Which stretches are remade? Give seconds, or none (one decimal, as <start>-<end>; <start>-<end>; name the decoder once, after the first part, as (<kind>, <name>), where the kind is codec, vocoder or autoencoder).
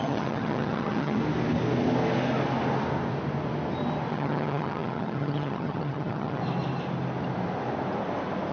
0.0-1.2 (vocoder, HiFi-GAN); 4.1-6.4